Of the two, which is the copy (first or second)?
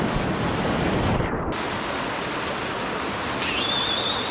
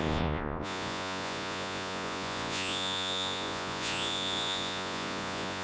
second